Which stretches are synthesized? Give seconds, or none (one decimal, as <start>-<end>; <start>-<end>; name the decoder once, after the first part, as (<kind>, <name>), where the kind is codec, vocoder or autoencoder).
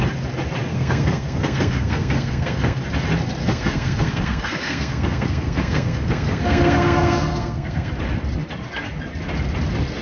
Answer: 0.7-2.8 (codec, SNAC); 3.4-7.9